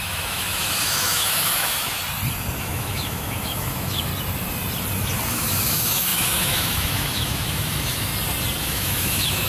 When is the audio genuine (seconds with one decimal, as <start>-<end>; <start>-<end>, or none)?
2.0-2.6; 4.1-5.3; 8.1-8.6

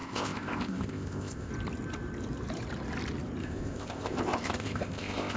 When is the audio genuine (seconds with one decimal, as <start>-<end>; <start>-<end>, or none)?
1.5-3.4

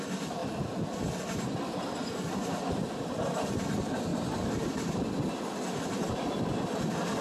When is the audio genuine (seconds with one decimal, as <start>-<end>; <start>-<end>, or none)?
0.0-4.1; 5.0-7.2

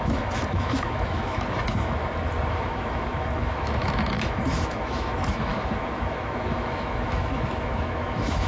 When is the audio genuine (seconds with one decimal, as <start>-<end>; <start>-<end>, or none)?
2.0-2.5